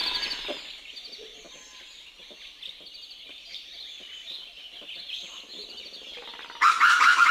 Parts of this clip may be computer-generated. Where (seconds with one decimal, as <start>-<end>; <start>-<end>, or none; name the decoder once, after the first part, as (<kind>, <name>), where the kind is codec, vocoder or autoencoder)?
3.3-7.3 (vocoder, BigVGAN v2)